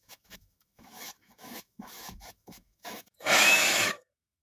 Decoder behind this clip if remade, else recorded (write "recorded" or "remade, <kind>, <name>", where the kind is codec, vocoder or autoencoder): remade, autoencoder, DAC-VAE